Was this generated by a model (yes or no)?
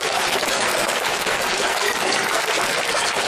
yes